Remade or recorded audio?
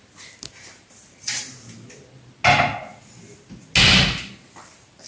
recorded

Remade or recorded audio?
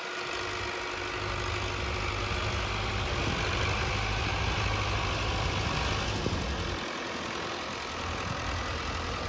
recorded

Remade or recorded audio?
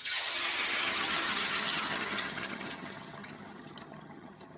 remade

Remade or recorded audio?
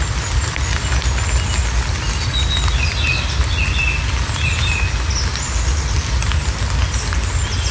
recorded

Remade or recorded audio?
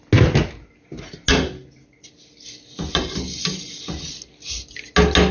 recorded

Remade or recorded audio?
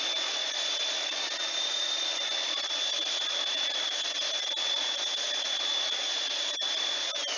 recorded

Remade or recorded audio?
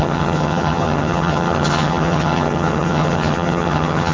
remade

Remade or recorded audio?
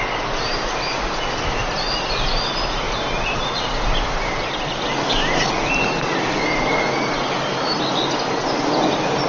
recorded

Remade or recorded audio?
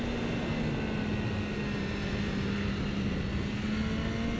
recorded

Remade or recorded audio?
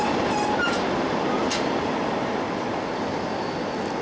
recorded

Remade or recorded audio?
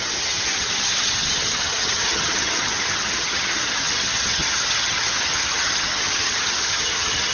remade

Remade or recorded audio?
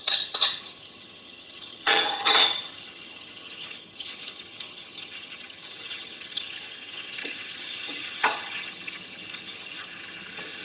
remade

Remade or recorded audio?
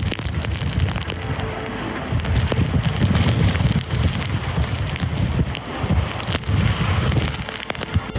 recorded